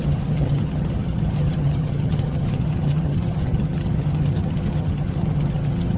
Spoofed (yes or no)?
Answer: yes